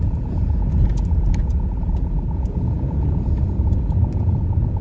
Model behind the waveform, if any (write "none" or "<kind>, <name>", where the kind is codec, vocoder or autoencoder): none